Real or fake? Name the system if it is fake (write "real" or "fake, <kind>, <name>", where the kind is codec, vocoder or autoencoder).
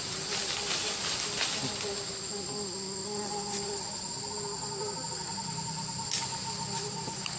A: real